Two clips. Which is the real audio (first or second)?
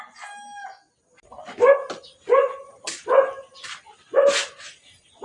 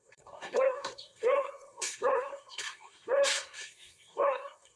first